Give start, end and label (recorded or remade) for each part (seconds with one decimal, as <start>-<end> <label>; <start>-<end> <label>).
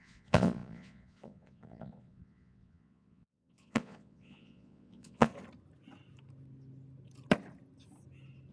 0.0-5.3 remade; 5.3-8.5 recorded